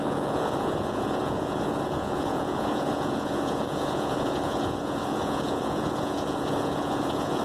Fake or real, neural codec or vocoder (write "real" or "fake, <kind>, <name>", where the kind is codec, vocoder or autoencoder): fake, vocoder, Vocos